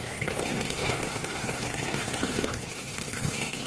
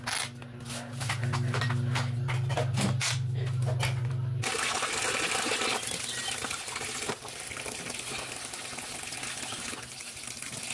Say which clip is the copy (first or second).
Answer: first